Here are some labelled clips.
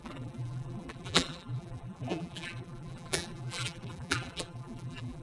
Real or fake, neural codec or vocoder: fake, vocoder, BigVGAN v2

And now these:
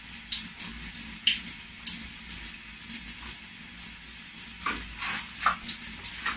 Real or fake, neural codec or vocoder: real